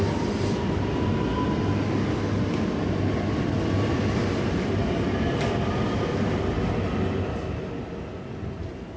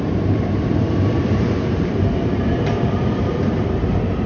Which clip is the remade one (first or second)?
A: second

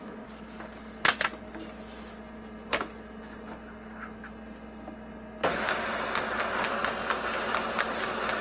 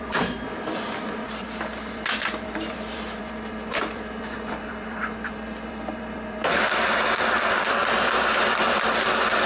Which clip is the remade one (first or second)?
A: second